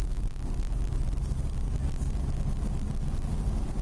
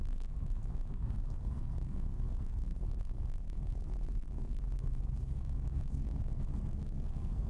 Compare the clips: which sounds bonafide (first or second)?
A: first